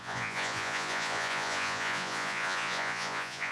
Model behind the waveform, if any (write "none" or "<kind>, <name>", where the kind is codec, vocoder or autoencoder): vocoder, Vocos